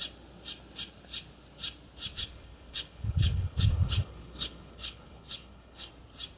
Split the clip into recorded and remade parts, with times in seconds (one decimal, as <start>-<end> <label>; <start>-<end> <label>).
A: 0.0-2.2 recorded; 2.2-5.9 remade; 5.9-6.4 recorded